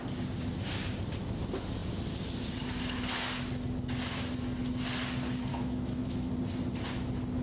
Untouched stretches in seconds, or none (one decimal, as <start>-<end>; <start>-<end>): 0.0-5.5; 6.3-7.4